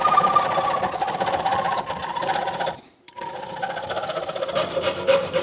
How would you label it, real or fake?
real